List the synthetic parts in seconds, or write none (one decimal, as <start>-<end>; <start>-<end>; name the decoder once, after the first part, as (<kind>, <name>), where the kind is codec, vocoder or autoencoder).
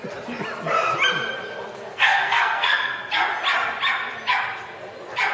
1.9-2.9 (codec, SNAC)